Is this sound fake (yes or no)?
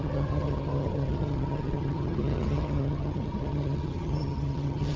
yes